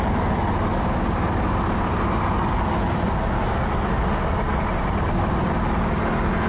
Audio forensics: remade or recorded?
recorded